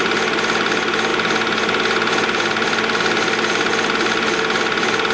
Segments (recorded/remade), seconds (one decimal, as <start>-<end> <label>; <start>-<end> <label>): 0.0-5.1 recorded